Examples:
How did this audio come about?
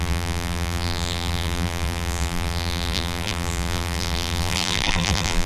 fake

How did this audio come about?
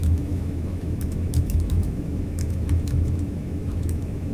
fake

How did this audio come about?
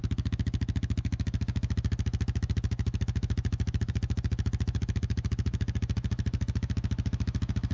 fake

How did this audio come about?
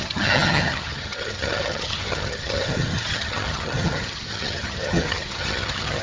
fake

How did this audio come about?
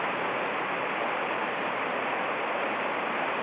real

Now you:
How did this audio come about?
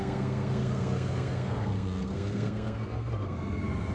fake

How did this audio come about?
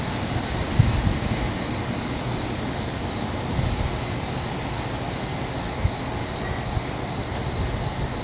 real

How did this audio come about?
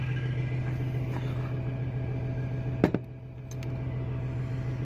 real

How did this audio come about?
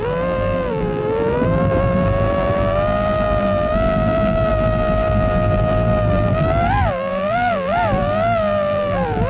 fake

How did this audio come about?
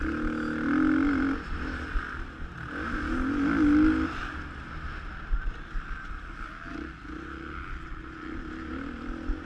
real